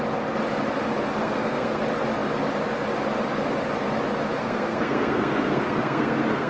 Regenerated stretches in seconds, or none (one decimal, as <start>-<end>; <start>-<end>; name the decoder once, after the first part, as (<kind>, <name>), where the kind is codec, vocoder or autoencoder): 1.2-1.8 (codec, SNAC); 4.4-6.5